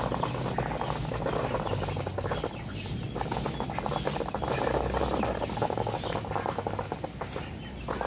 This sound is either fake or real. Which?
real